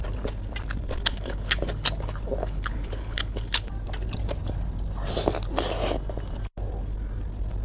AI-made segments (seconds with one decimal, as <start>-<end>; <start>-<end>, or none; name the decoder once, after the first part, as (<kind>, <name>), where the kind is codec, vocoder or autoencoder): 1.1-1.6 (codec, HILCodec); 2.4-3.7